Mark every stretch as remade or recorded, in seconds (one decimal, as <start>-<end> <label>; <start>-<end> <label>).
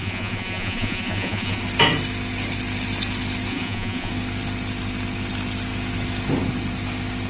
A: 0.0-1.6 remade; 1.6-3.5 recorded; 3.5-4.1 remade; 4.1-7.3 recorded